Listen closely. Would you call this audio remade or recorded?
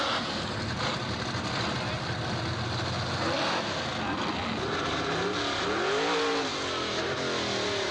recorded